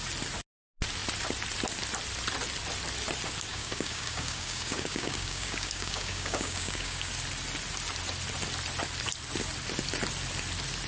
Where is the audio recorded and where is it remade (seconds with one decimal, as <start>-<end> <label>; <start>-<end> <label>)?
0.0-3.5 recorded; 3.5-7.1 remade; 7.1-10.9 recorded